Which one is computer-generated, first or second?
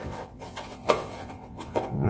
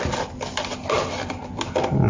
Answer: first